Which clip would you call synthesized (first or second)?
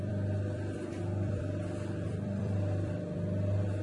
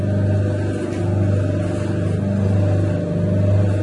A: first